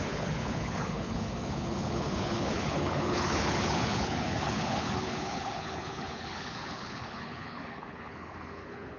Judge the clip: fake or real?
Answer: fake